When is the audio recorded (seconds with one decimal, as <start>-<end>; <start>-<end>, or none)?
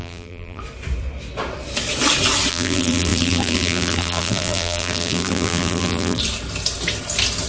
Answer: 0.6-2.5; 6.2-7.5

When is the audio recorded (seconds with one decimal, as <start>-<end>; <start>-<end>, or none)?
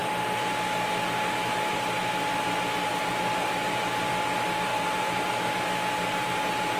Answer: 0.0-4.7; 5.6-6.8